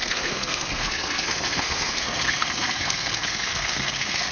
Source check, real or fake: fake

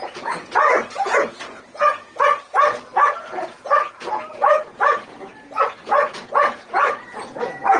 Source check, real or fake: fake